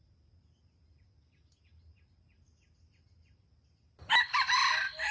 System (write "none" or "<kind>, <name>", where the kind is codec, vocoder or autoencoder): none